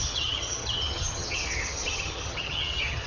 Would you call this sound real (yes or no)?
no